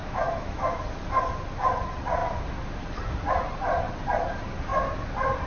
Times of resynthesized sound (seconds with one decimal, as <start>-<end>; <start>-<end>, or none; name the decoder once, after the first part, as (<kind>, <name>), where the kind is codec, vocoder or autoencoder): 0.0-0.8 (autoencoder, DAC-VAE)